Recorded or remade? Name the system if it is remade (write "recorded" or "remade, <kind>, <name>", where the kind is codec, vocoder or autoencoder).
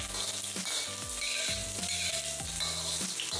recorded